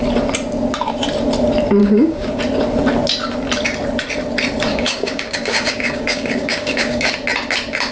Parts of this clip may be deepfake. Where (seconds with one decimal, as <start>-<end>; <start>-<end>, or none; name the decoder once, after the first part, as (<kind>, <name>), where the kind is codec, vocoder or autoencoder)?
1.8-2.4 (codec, DAC); 4.7-7.1